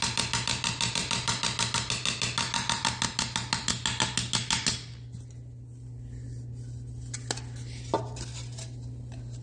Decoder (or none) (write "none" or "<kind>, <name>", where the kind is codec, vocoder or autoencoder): none